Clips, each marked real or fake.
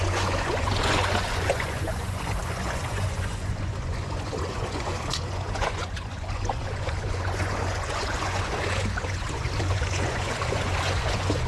fake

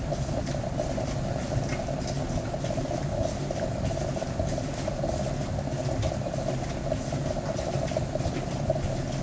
real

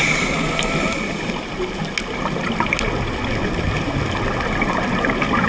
real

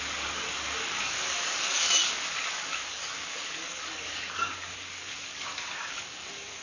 fake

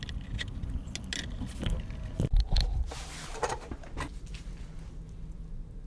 real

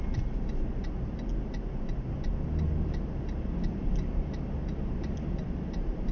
real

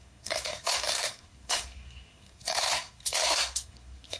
fake